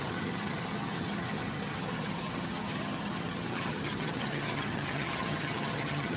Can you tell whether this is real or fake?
fake